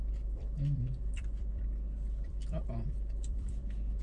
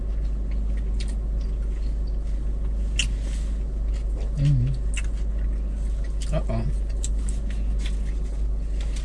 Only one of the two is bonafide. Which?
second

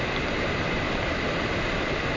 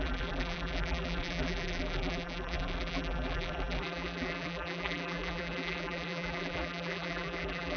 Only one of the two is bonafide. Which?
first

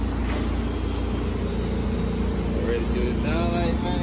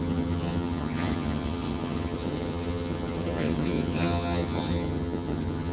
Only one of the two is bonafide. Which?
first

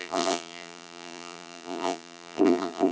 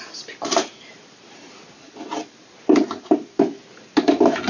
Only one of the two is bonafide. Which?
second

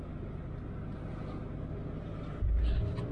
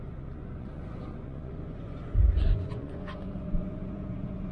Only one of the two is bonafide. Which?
first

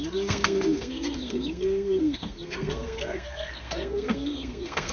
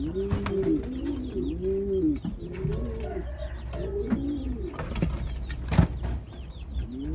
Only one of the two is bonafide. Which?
second